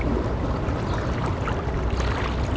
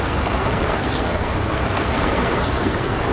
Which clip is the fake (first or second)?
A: second